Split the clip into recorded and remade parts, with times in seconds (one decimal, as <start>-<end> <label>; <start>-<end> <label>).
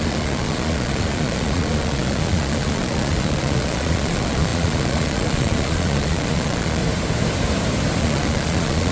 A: 0.0-6.8 remade; 6.8-8.0 recorded; 8.0-8.9 remade